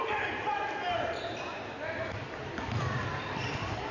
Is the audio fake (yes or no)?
yes